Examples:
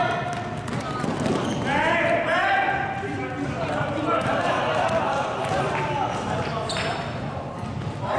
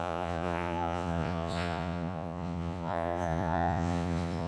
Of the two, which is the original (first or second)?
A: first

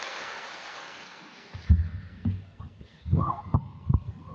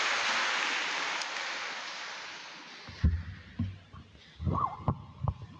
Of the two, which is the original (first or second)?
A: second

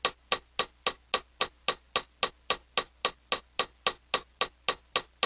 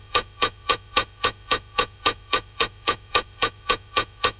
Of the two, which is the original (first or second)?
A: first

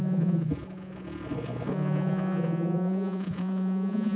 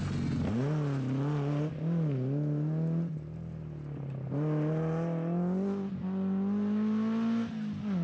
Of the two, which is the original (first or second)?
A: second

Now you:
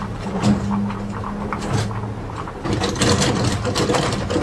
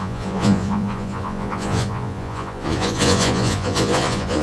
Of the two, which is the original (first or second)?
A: first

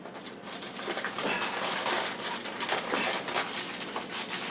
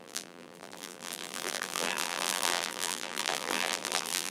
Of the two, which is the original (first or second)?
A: first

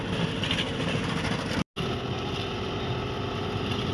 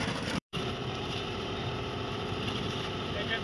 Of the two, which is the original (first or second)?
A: first